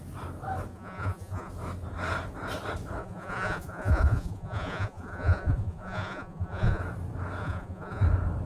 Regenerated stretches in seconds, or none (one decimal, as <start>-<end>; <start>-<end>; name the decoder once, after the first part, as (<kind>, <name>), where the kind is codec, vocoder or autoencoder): 0.7-1.5 (vocoder, Vocos); 3.0-6.8; 7.4-8.0

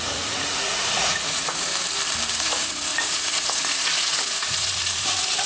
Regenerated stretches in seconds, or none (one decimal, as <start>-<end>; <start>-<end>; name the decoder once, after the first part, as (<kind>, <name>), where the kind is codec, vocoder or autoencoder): 0.0-1.7 (vocoder, Vocos); 2.3-5.5

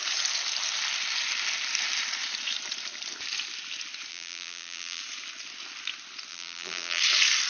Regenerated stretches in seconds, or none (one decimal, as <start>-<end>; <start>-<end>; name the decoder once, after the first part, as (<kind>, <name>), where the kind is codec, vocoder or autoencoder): 4.1-5.0 (vocoder, BigVGAN v2); 6.3-7.0